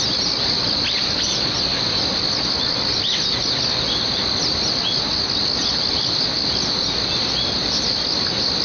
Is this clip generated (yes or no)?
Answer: no